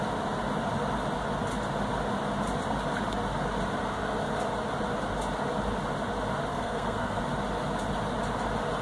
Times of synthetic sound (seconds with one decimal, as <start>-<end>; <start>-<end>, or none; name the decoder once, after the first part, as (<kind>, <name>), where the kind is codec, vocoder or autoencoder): 6.5-7.2 (codec, SNAC)